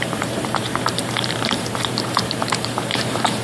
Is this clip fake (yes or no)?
yes